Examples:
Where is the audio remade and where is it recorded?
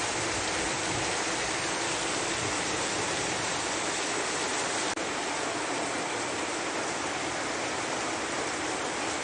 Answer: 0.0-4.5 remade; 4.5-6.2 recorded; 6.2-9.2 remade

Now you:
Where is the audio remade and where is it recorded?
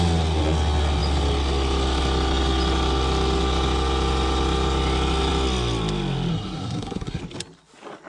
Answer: 0.0-6.3 recorded; 6.3-7.2 remade; 7.2-8.1 recorded